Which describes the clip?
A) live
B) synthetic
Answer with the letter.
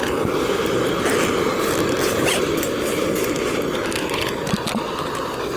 A